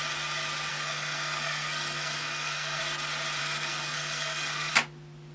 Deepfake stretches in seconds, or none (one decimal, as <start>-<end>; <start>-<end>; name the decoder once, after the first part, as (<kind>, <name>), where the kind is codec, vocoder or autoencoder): 0.7-2.8 (codec, SNAC); 3.4-4.7